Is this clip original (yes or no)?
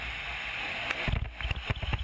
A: yes